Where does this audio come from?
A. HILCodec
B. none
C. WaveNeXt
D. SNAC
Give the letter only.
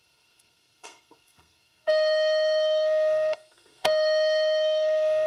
D